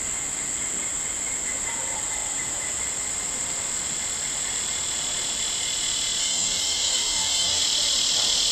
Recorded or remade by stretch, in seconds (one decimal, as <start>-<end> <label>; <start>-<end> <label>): 0.0-6.2 recorded; 6.2-7.6 remade; 7.6-8.5 recorded